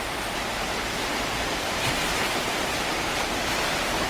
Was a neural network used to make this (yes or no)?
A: no